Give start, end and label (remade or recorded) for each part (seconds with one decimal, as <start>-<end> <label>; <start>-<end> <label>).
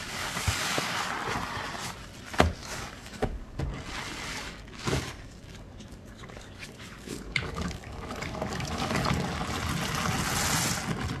0.0-1.1 remade; 1.1-2.6 recorded; 2.6-3.6 remade; 3.6-4.3 recorded; 4.3-9.0 remade; 9.0-11.2 recorded